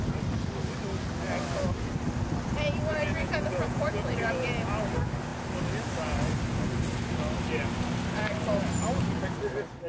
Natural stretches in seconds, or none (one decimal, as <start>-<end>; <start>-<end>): 0.0-2.9; 4.3-9.9